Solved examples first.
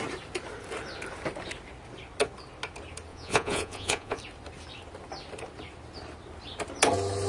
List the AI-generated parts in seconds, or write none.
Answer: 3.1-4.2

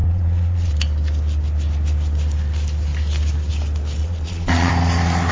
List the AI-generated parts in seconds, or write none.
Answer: 0.0-0.7; 4.0-4.7